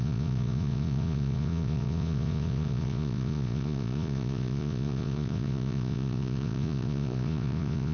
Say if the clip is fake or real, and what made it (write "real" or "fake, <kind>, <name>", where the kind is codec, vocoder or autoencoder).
fake, vocoder, Vocos